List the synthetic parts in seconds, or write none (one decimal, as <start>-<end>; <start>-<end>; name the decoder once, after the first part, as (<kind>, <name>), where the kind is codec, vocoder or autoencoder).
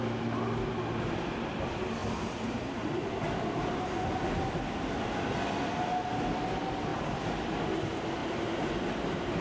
2.0-3.1 (vocoder, BigVGAN v2); 6.9-7.6; 8.2-8.9